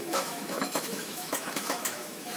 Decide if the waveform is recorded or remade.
remade